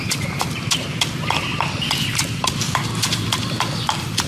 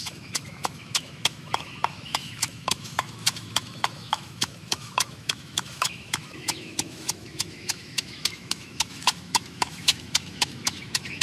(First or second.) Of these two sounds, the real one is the first